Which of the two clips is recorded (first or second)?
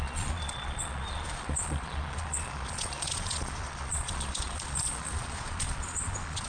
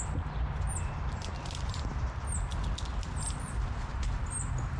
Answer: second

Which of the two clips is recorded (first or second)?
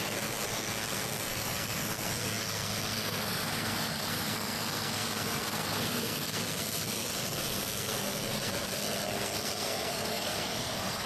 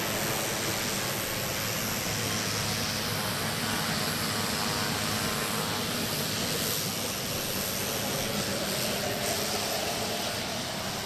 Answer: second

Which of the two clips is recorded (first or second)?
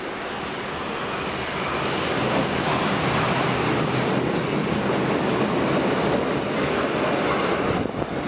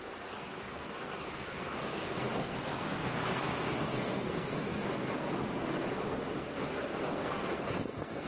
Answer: first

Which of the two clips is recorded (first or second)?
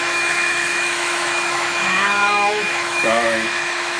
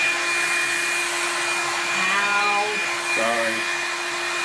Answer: second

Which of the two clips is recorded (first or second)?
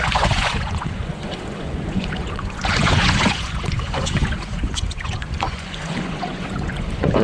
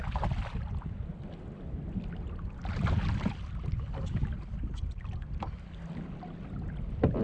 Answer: second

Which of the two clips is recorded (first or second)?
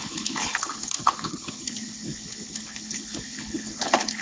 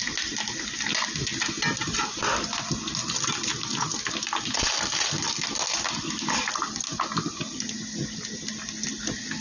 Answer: second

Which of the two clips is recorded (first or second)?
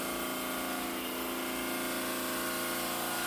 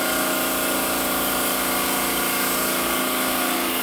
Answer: first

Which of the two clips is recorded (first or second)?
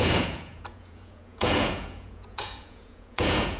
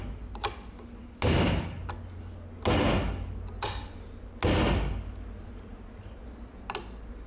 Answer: second